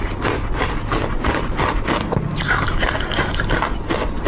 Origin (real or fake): real